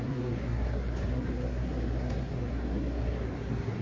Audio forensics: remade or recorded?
remade